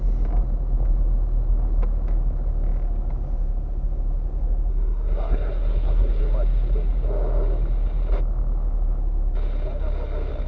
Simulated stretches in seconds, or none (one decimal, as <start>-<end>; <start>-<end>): 4.7-6.2